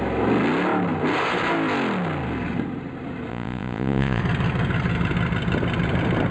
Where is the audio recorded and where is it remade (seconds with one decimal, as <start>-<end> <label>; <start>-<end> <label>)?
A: 0.0-3.3 recorded; 3.3-4.2 remade; 4.2-6.3 recorded